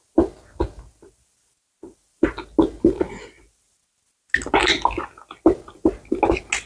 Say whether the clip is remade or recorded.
recorded